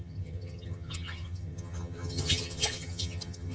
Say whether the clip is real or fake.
fake